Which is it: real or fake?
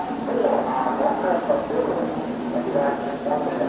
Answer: real